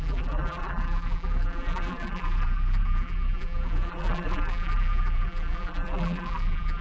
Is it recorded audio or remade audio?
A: remade